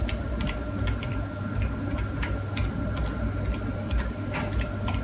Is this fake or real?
real